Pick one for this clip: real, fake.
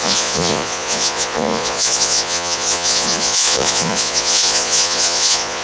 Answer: fake